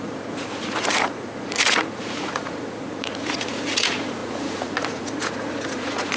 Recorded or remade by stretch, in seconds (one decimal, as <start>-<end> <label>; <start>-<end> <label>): 0.0-6.2 remade